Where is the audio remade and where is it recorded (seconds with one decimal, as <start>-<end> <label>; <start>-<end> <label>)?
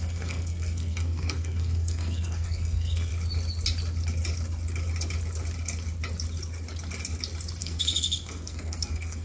0.0-3.1 remade; 3.1-7.6 recorded; 7.6-9.2 remade